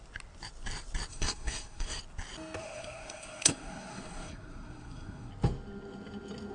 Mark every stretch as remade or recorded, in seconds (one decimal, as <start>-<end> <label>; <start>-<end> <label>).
0.0-1.1 recorded; 1.1-2.0 remade; 2.0-2.6 recorded; 2.6-5.3 remade; 5.3-6.5 recorded